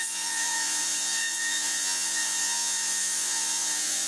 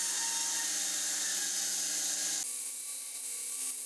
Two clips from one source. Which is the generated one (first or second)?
first